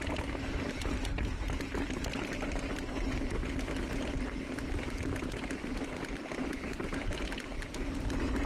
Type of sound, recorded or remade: remade